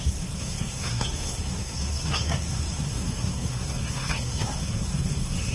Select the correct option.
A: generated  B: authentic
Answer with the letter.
A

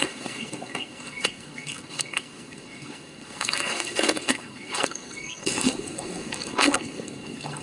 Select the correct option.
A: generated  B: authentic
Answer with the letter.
A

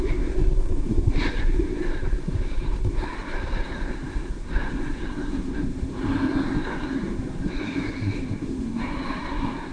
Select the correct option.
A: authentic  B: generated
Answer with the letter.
B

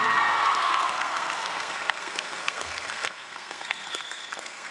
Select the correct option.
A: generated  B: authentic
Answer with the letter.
A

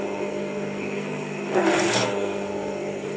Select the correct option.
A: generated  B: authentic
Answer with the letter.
A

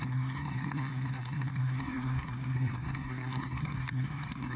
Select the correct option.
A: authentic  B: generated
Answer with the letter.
B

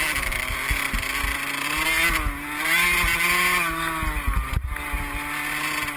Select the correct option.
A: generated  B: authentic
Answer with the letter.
B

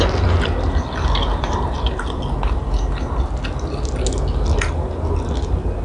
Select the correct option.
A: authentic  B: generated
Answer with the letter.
A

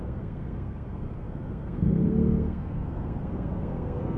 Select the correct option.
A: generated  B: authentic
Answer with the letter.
A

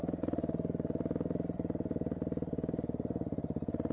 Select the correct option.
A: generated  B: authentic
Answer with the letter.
B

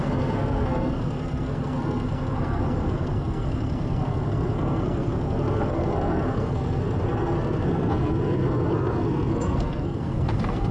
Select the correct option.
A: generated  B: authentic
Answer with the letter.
A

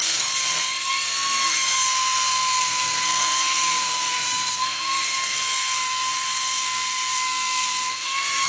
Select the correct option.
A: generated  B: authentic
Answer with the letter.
A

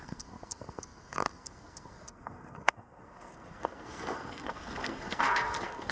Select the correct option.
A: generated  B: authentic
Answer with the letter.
A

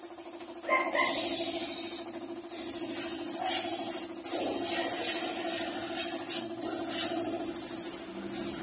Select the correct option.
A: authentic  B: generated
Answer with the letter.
A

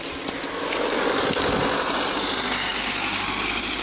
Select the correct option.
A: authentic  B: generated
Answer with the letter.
A